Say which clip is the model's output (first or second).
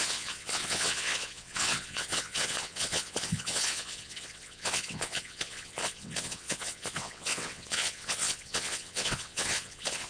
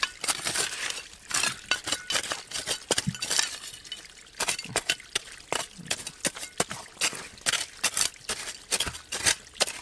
first